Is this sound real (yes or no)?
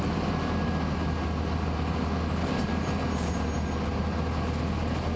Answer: yes